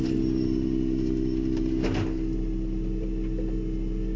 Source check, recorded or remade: recorded